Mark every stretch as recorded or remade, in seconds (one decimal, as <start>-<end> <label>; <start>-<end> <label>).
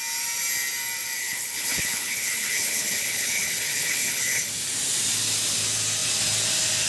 0.0-1.2 recorded; 1.2-4.5 remade; 4.5-6.9 recorded